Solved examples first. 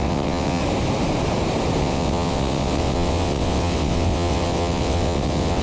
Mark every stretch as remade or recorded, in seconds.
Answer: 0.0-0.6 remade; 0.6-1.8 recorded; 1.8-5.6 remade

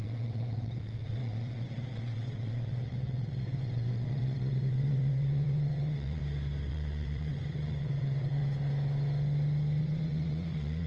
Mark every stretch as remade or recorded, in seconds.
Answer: 0.0-6.2 remade; 6.2-6.7 recorded; 6.7-8.4 remade; 8.4-9.8 recorded; 9.8-10.9 remade

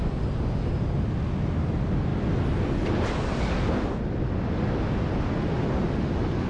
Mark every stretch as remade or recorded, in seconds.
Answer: 0.0-6.5 recorded